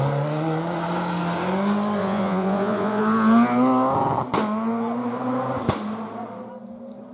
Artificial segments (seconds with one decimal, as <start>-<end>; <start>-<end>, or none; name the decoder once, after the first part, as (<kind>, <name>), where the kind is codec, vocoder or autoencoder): 2.0-3.0 (vocoder, Vocos)